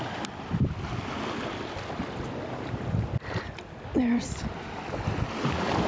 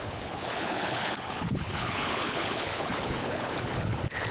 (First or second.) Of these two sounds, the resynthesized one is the second